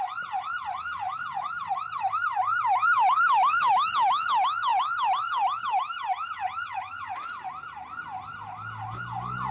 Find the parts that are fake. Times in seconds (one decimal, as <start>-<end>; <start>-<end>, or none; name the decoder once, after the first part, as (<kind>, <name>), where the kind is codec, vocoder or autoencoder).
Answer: 0.9-3.7 (vocoder, BigVGAN v2); 4.7-5.6